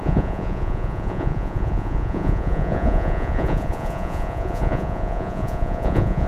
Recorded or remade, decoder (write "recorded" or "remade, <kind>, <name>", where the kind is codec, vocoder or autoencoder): remade, vocoder, Vocos